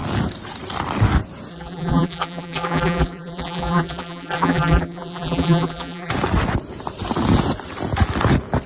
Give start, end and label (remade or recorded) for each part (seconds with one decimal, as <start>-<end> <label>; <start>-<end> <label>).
0.0-1.5 recorded; 1.5-6.1 remade; 6.1-8.7 recorded